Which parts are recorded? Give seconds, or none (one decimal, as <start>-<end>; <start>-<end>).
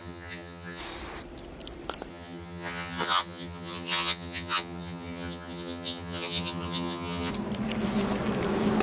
0.8-2.1; 7.3-8.8